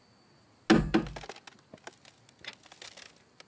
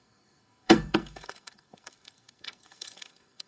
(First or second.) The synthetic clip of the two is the second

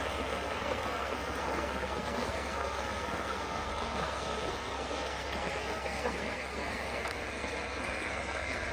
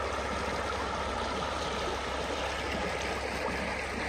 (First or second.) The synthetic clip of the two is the first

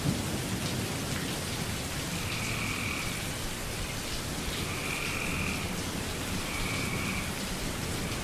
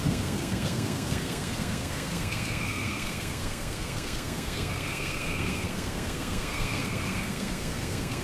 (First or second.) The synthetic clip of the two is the second